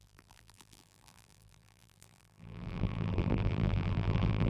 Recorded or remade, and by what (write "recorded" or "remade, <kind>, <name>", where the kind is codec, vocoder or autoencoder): remade, vocoder, BigVGAN v2